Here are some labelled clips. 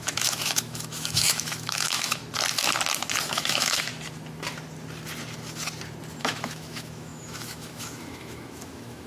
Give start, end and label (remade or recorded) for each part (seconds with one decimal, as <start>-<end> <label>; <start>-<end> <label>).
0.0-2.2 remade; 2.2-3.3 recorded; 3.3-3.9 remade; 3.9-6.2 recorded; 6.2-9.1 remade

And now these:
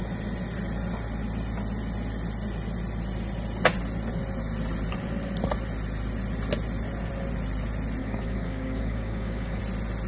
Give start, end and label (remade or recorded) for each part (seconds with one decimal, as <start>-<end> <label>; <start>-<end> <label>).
0.0-8.0 recorded; 8.0-9.6 remade; 9.6-10.1 recorded

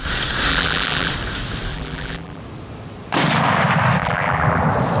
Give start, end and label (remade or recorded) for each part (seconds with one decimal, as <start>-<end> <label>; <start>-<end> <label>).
0.0-0.5 recorded; 0.5-1.1 remade; 1.1-1.7 recorded; 1.7-2.4 remade; 2.4-4.0 recorded; 4.0-4.6 remade; 4.6-5.0 recorded